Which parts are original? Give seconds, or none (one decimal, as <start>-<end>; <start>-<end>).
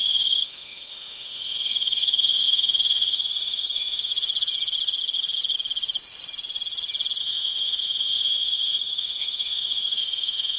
4.1-7.2